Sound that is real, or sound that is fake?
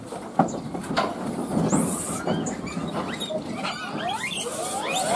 real